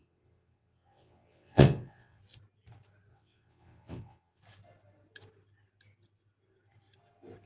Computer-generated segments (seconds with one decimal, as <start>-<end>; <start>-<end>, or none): 0.0-2.2; 3.1-4.4